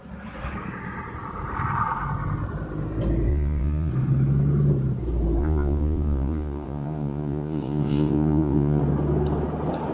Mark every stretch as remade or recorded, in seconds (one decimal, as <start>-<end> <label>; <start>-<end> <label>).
0.0-3.3 recorded; 3.3-3.9 remade; 3.9-5.4 recorded; 5.4-8.8 remade; 8.8-9.9 recorded